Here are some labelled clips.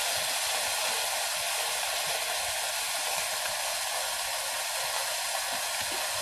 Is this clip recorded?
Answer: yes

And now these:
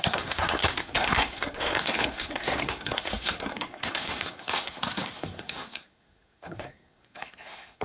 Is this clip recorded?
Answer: no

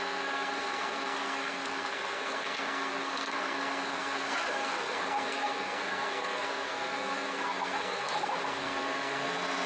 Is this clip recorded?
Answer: no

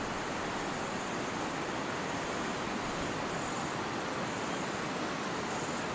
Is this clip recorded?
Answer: yes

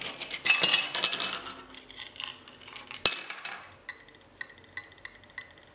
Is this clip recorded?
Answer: yes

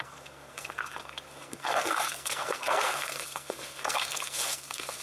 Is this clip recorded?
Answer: no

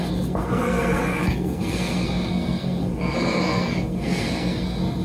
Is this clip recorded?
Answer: no